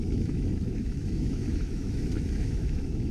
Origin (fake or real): fake